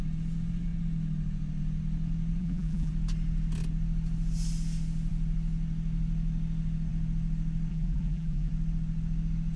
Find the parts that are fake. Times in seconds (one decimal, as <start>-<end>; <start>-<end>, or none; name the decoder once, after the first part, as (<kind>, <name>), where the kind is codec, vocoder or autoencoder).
2.4-2.9 (vocoder, BigVGAN v2); 7.7-8.5